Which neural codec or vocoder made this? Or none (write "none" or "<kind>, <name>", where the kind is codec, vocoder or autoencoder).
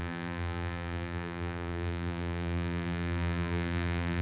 vocoder, BigVGAN v2